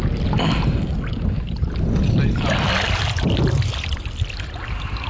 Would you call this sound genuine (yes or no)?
yes